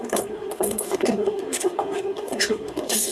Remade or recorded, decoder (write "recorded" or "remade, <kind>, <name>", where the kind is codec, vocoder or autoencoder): remade, codec, SNAC